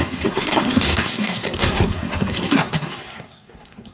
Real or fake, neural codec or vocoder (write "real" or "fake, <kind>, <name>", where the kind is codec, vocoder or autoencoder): fake, codec, SNAC